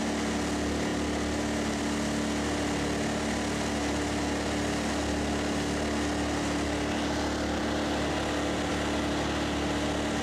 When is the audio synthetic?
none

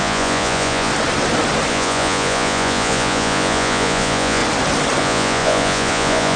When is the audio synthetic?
0.0-0.9 (vocoder, Vocos); 1.7-4.4; 5.0-6.4